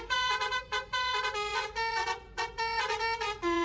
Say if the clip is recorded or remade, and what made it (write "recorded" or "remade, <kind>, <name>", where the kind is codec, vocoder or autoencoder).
remade, vocoder, Vocos